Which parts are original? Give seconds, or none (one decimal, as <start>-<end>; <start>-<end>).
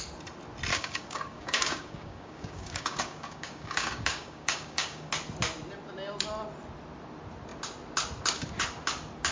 0.0-0.7; 5.1-9.3